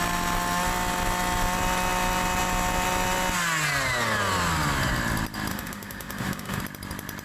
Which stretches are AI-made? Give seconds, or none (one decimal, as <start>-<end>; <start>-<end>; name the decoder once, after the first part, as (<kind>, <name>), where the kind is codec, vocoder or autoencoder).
5.5-6.6 (autoencoder, DAC-VAE)